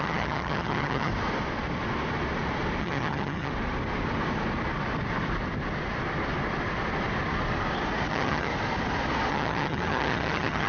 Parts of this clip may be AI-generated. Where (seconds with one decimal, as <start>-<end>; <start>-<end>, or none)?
0.0-1.1; 2.8-3.5; 8.1-8.5; 9.3-10.7